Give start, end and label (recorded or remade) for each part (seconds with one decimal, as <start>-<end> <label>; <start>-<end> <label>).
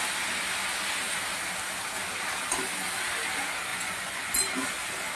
0.0-3.7 recorded; 3.7-4.3 remade; 4.3-5.2 recorded